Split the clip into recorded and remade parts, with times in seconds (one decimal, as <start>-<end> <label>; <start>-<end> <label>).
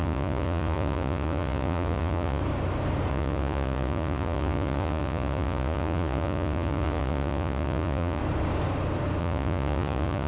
0.0-2.4 remade; 2.4-3.1 recorded; 3.1-8.2 remade; 8.2-9.2 recorded; 9.2-10.3 remade